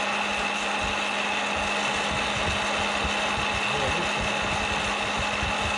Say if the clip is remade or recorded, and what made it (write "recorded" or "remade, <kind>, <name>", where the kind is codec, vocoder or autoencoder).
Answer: recorded